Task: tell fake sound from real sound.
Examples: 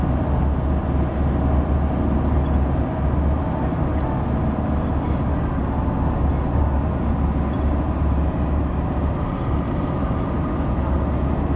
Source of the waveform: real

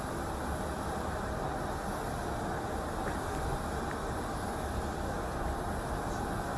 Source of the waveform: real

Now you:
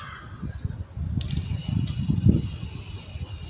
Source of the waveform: real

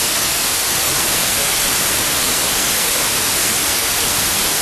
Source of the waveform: fake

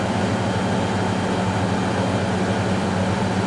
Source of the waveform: real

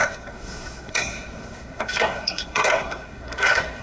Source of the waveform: fake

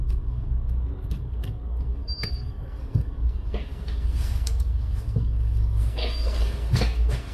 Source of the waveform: fake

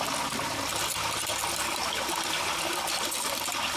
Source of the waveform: real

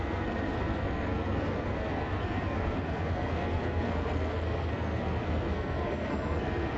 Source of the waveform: fake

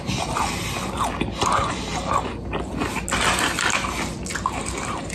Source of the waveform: real